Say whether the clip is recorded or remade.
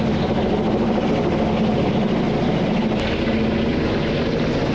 recorded